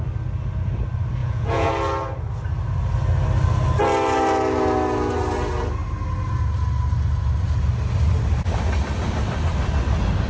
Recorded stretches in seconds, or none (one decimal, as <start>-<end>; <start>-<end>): 0.0-1.2; 1.7-10.3